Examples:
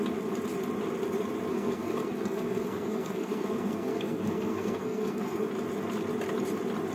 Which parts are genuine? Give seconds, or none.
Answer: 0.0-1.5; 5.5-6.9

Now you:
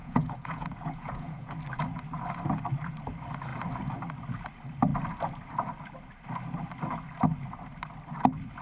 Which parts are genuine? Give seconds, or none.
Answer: 1.5-8.6

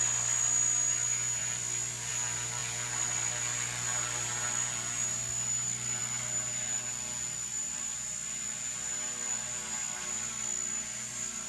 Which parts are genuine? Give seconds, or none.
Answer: 0.0-11.5

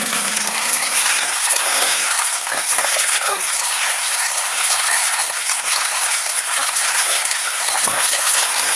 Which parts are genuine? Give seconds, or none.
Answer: none

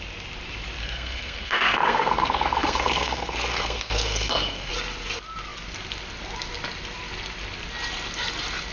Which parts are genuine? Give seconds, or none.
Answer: 0.0-0.8; 4.7-8.7

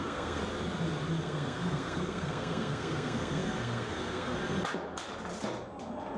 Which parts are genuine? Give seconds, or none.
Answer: 0.4-1.2; 4.4-6.2

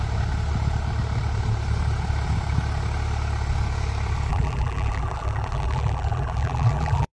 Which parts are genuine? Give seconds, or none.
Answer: 0.0-4.3